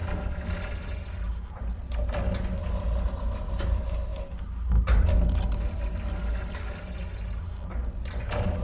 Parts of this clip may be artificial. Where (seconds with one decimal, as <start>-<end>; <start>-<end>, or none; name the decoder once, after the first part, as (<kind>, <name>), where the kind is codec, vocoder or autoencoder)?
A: none